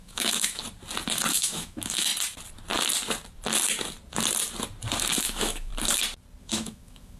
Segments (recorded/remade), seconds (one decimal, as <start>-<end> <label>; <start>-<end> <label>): 0.0-0.6 remade; 0.6-1.3 recorded; 1.3-2.1 remade; 2.1-5.2 recorded; 5.2-5.7 remade; 5.7-6.4 recorded; 6.4-7.2 remade